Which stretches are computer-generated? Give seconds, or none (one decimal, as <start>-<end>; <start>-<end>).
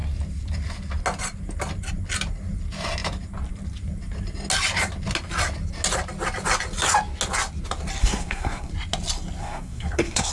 8.0-8.7; 9.4-10.3